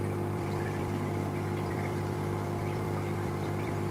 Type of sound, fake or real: fake